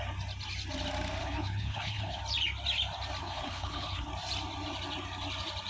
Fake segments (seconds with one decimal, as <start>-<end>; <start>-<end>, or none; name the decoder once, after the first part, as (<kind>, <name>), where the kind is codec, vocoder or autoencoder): 1.2-2.2 (codec, HILCodec); 3.2-4.1